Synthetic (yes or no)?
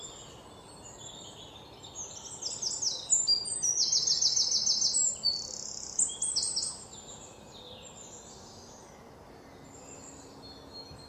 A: no